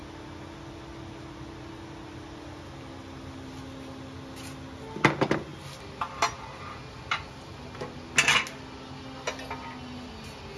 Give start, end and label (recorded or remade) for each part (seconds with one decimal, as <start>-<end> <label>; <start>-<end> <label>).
0.0-10.6 recorded